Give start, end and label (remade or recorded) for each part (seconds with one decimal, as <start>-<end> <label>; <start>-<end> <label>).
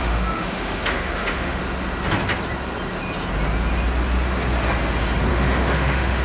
0.0-1.6 remade; 1.6-5.3 recorded; 5.3-6.2 remade